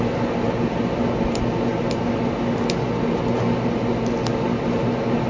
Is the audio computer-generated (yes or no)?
no